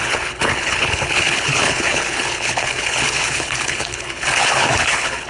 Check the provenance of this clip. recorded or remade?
remade